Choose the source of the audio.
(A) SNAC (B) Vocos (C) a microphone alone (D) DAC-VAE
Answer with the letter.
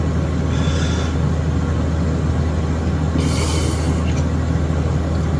C